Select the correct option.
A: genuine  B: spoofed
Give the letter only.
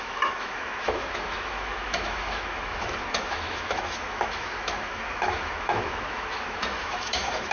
B